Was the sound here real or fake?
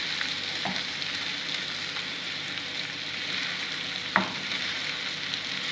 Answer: real